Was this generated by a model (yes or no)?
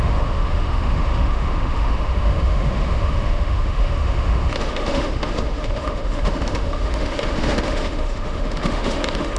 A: yes